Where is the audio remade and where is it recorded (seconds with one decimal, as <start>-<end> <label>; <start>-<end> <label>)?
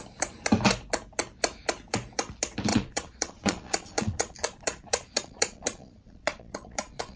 0.0-2.7 recorded; 2.7-7.2 remade